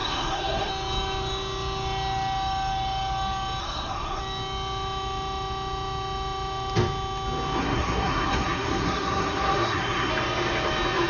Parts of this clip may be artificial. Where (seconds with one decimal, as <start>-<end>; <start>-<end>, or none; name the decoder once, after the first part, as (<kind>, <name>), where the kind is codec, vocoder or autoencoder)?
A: 0.0-0.7 (codec, SNAC); 3.6-4.2; 7.6-10.1